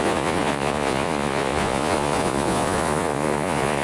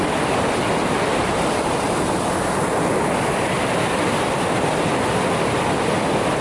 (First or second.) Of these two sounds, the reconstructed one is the first